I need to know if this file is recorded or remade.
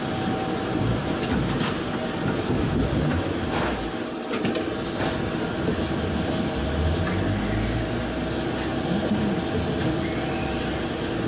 recorded